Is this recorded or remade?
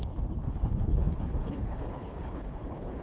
remade